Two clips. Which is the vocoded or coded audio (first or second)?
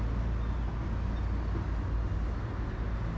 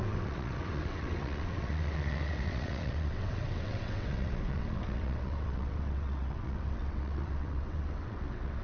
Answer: second